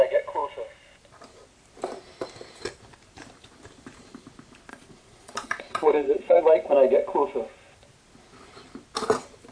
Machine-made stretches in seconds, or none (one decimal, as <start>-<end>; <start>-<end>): 4.7-6.4